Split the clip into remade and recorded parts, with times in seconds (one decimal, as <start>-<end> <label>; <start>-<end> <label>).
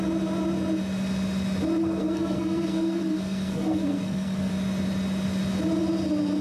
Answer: 0.0-1.8 recorded; 1.8-4.5 remade; 4.5-6.4 recorded